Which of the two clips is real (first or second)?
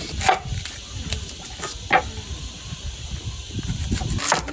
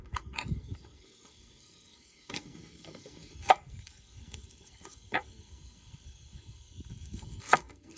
first